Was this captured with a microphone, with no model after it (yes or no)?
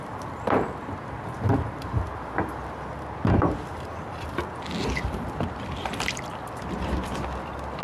yes